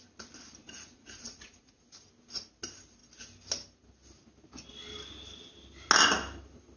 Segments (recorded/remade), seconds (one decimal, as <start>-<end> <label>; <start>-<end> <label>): 0.0-0.6 recorded; 0.6-1.8 remade; 1.8-6.8 recorded